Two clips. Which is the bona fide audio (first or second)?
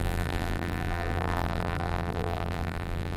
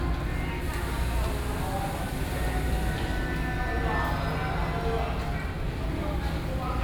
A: second